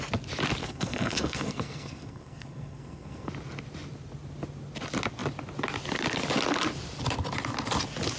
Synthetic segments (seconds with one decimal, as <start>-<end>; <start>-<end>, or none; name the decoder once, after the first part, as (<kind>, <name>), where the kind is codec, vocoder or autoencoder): 0.6-3.3 (codec, SNAC)